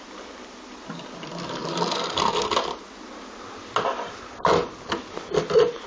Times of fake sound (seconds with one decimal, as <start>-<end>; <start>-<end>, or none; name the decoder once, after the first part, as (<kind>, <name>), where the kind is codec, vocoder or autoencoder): 1.6-2.3 (vocoder, BigVGAN v2)